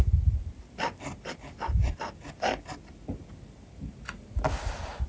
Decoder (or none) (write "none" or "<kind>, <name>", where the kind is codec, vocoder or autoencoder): none